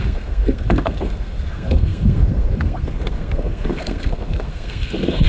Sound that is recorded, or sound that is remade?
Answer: remade